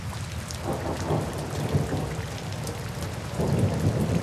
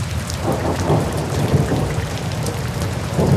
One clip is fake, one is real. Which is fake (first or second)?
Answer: second